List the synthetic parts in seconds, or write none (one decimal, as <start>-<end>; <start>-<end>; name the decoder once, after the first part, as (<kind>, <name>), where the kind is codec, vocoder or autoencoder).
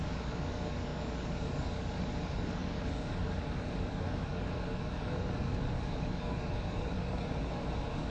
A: 0.0-8.1 (codec, DAC)